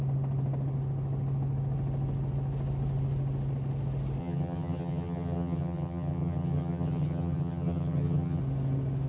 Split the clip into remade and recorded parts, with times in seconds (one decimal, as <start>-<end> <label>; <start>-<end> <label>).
0.0-4.2 recorded; 4.2-8.4 remade; 8.4-9.1 recorded